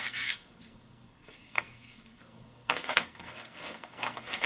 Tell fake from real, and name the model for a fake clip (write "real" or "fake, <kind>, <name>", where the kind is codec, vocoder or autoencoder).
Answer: fake, codec, SNAC